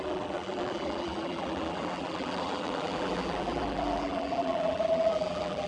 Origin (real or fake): fake